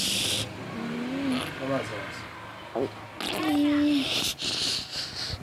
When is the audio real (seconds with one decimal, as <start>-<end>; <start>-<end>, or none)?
0.0-5.4